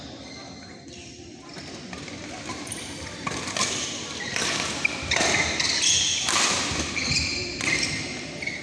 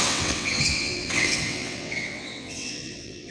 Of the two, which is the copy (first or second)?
second